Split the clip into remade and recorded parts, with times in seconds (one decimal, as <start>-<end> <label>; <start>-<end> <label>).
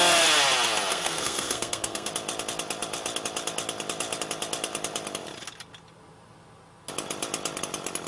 0.0-0.9 recorded; 0.9-2.1 remade; 2.1-8.1 recorded